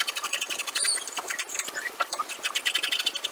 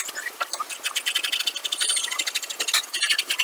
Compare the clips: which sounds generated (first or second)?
first